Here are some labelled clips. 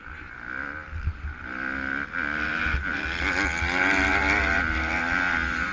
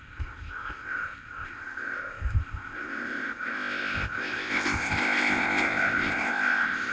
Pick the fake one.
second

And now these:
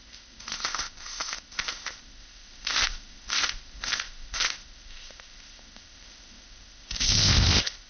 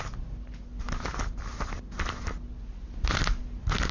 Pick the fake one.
first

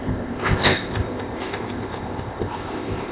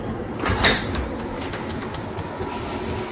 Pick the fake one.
first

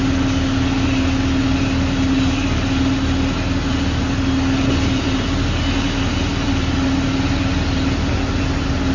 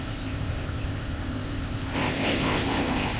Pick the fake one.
second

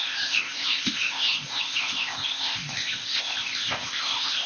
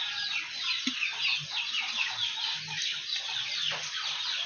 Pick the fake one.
first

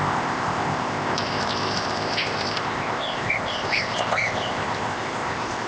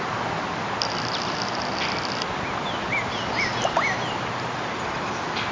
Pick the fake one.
first